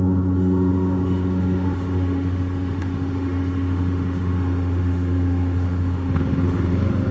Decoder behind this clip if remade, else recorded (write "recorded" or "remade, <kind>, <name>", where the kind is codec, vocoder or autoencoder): remade, autoencoder, DAC-VAE